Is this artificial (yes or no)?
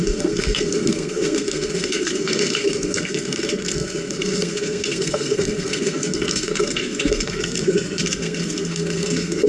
yes